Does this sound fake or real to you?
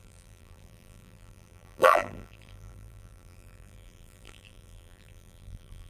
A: fake